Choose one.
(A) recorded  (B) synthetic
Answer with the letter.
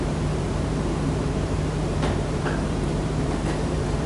B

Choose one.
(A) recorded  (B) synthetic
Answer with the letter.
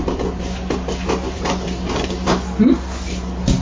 A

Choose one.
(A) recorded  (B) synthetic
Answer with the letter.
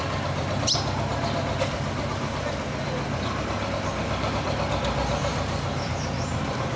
B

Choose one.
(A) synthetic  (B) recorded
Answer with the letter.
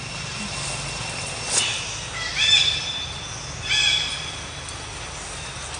B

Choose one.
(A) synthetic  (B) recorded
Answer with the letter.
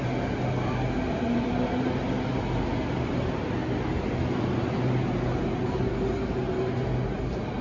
B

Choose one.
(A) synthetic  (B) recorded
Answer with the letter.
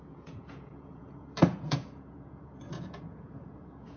A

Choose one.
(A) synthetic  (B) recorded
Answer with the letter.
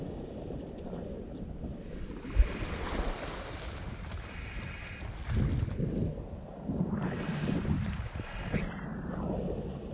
B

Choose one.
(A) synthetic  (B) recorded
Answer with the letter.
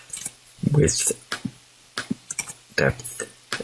B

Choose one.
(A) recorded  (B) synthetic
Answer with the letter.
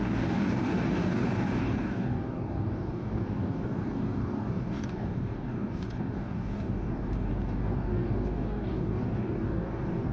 B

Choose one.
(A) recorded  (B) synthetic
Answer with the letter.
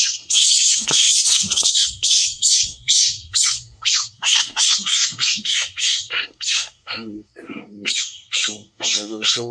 B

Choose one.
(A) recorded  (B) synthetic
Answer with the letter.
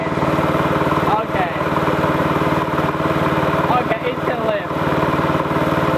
B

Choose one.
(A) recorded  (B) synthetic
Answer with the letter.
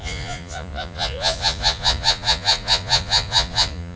B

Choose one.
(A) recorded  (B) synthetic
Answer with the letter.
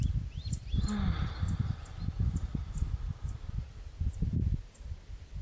A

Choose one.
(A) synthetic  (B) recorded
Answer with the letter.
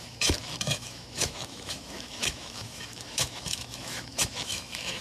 A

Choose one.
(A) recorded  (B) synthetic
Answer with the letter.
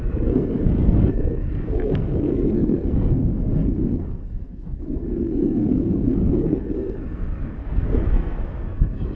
B